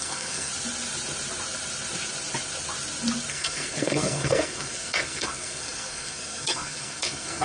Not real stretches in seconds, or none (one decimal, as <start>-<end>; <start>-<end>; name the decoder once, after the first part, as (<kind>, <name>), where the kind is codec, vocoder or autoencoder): 0.0-0.5 (codec, SNAC); 3.3-7.4